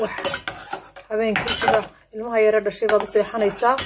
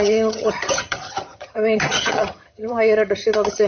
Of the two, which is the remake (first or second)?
second